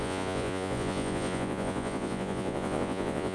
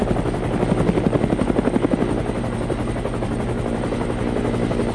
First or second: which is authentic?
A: second